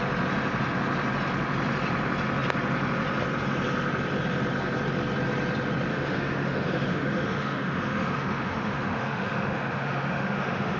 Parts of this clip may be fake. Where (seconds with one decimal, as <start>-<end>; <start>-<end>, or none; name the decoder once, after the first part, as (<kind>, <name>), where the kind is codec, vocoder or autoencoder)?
5.9-10.8 (autoencoder, DAC-VAE)

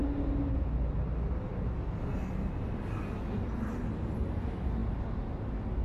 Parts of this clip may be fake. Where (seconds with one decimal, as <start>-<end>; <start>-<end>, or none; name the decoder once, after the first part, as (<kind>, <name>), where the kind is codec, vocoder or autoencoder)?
none